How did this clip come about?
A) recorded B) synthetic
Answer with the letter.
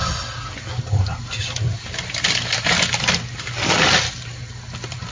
B